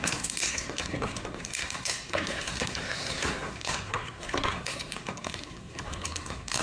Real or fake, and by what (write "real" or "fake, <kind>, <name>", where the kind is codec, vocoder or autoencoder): fake, codec, SNAC